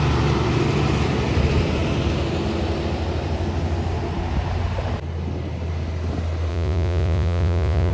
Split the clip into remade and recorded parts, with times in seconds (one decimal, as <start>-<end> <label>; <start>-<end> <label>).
0.0-6.5 recorded; 6.5-7.9 remade